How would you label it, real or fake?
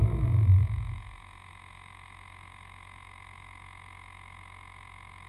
fake